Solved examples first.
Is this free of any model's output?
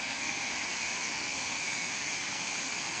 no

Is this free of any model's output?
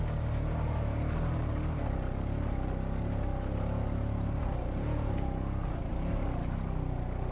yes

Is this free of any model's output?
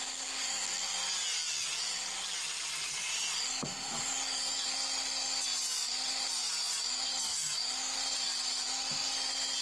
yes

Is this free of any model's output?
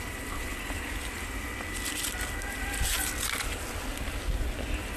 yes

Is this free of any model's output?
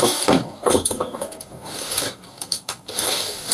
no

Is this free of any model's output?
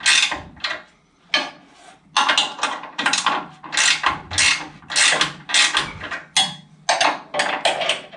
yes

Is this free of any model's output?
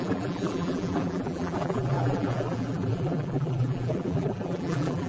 no